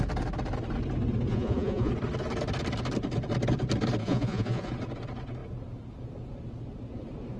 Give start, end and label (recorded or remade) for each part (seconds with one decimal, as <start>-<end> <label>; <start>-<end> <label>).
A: 0.0-1.3 recorded; 1.3-1.9 remade; 1.9-4.0 recorded; 4.0-4.7 remade; 4.7-7.4 recorded